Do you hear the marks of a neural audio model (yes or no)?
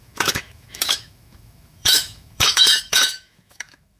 yes